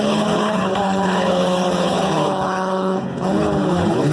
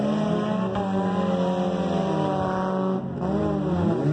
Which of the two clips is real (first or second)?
second